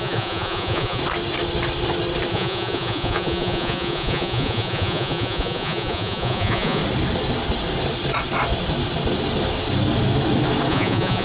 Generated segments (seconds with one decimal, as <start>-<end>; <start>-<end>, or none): 0.0-1.0; 2.3-6.8; 10.7-11.2